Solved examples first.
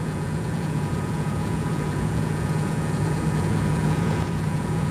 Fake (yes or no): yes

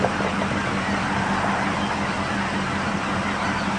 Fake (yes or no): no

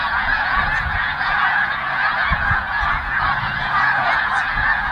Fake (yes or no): yes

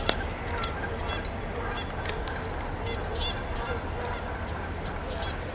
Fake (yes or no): no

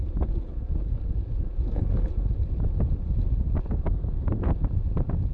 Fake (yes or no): yes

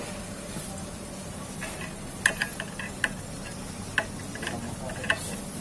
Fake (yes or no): no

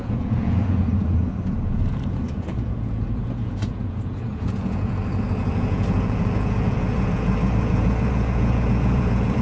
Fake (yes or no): yes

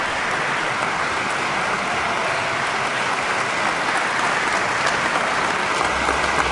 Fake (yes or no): no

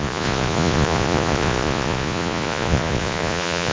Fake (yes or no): yes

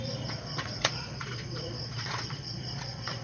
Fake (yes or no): yes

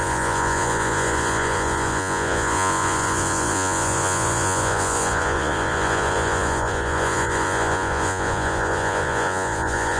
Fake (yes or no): yes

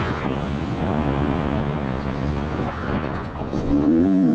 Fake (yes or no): yes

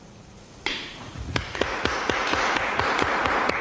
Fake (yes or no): yes